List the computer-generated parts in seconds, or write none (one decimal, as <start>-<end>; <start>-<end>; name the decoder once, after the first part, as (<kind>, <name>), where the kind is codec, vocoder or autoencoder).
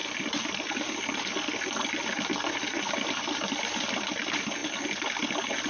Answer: none